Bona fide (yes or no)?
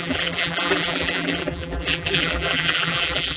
no